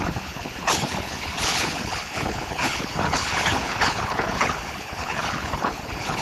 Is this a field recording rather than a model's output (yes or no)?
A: no